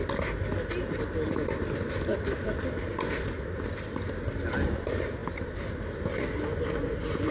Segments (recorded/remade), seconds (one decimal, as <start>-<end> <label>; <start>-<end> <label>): 0.0-7.3 recorded

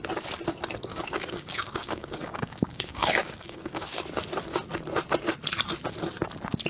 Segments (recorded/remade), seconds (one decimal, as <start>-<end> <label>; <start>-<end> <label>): 0.0-0.9 recorded; 0.9-4.0 remade; 4.0-6.7 recorded

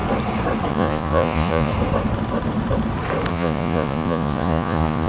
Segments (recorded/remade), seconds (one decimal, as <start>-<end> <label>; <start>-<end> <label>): 0.0-0.7 recorded; 0.7-1.7 remade; 1.7-3.3 recorded; 3.3-5.1 remade

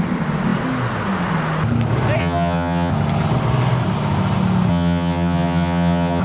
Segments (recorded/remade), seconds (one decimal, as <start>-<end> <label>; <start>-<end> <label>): 0.0-2.2 recorded; 2.2-2.9 remade; 2.9-4.7 recorded; 4.7-6.2 remade

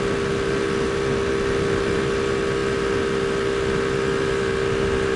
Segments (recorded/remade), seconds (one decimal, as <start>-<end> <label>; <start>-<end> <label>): 0.0-5.2 recorded

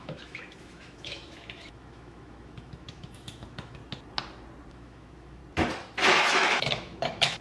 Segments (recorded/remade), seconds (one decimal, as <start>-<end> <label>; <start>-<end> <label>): 0.0-3.8 remade; 3.8-4.7 recorded; 4.7-5.4 remade; 5.4-6.2 recorded; 6.2-7.4 remade